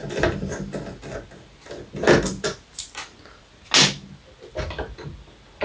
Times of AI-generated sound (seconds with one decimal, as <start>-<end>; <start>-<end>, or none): none